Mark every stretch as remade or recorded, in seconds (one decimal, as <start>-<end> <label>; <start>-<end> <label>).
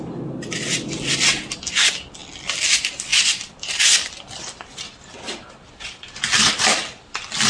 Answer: 0.0-7.5 recorded